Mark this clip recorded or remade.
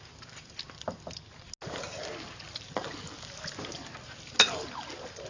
recorded